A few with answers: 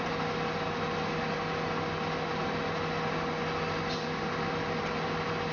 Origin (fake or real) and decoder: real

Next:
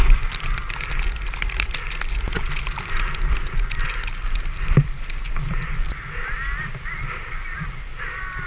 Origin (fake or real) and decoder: fake, vocoder, BigVGAN v2